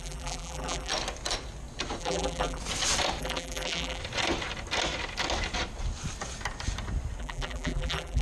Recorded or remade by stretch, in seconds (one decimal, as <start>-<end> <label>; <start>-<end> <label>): 0.0-0.9 remade; 0.9-2.0 recorded; 2.0-2.6 remade; 2.6-3.2 recorded; 3.2-4.0 remade; 4.0-7.2 recorded; 7.2-8.2 remade